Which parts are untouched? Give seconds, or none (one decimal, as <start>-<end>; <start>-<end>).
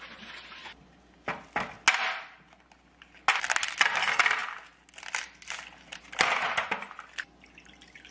0.0-8.1